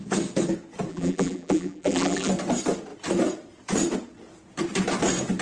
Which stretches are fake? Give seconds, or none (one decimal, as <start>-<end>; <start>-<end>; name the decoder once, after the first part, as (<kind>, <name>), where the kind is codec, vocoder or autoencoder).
0.9-2.3 (vocoder, BigVGAN v2)